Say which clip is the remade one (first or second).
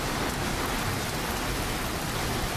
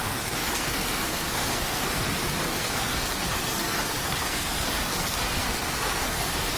second